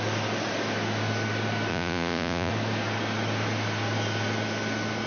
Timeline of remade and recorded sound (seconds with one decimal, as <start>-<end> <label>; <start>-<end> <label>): 0.0-1.7 recorded; 1.7-2.5 remade; 2.5-5.1 recorded